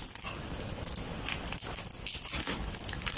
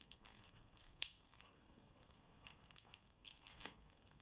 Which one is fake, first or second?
second